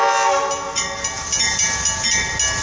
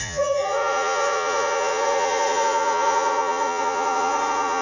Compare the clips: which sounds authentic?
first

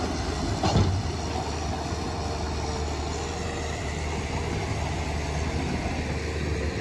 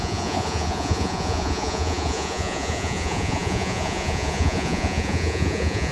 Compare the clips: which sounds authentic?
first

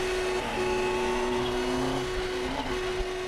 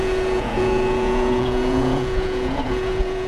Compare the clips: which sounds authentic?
first